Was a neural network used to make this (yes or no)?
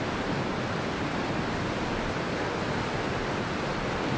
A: no